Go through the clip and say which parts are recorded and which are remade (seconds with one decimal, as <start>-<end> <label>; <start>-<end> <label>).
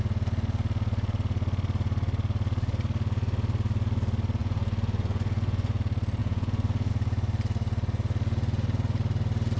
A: 0.0-4.4 recorded; 4.4-5.8 remade; 5.8-6.2 recorded; 6.2-6.9 remade; 6.9-9.6 recorded